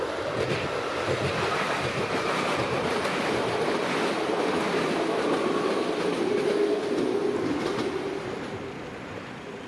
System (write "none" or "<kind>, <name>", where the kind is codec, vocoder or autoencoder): none